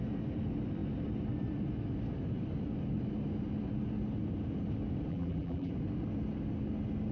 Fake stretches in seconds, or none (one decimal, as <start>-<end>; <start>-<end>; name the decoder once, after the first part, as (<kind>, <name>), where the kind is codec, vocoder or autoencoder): 5.1-5.7 (vocoder, BigVGAN v2)